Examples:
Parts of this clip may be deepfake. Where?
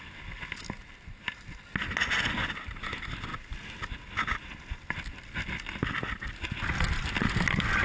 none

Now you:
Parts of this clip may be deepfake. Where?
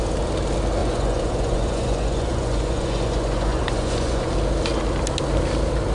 0.8-4.3 (vocoder, Vocos)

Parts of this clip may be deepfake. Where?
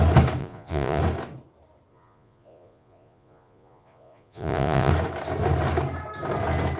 0.4-1.0 (vocoder, Vocos); 1.9-4.9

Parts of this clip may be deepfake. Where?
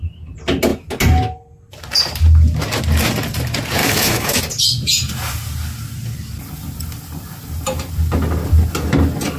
3.8-4.4 (autoencoder, DAC-VAE)